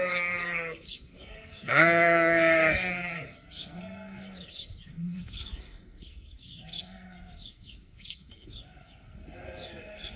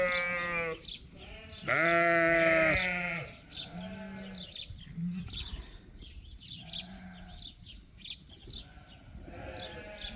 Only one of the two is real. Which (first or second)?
second